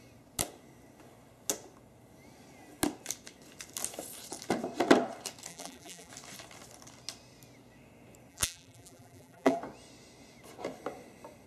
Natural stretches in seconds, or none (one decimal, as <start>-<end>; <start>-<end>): 0.0-5.5; 6.1-8.3; 9.6-11.5